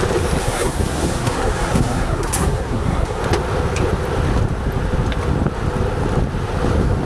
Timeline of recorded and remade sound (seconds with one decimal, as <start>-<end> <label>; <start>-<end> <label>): 0.0-0.4 recorded; 0.4-3.2 remade; 3.2-7.1 recorded